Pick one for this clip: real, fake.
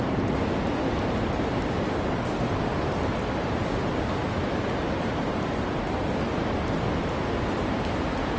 real